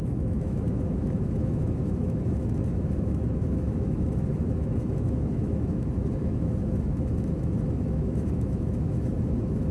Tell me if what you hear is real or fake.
fake